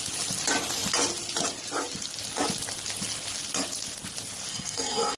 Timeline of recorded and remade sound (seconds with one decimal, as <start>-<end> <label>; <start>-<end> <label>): 0.0-4.5 recorded; 4.5-5.2 remade